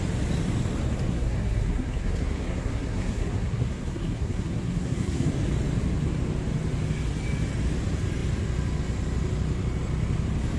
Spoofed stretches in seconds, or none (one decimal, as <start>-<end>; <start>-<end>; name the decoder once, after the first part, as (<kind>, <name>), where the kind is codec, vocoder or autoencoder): 1.1-5.3 (codec, SNAC)